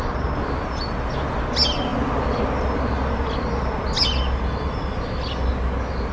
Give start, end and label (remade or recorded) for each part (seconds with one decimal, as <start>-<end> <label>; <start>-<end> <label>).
0.0-6.1 recorded